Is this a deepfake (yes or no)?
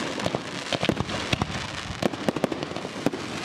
no